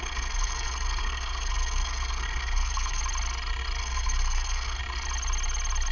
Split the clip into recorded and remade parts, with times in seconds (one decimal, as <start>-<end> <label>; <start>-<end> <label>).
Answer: 0.0-3.0 remade; 3.0-3.8 recorded; 3.8-4.8 remade; 4.8-5.9 recorded